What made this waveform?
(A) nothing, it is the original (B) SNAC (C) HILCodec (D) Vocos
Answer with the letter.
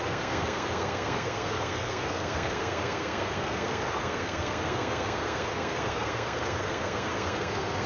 B